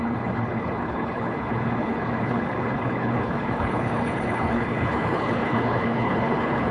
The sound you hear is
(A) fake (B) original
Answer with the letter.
A